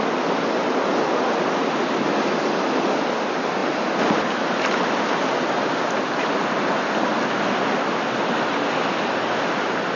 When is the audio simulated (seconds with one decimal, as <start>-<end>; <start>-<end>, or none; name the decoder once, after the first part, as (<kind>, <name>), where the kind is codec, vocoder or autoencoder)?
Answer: none